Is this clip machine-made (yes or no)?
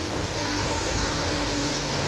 yes